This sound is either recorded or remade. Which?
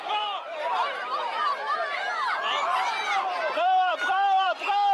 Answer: remade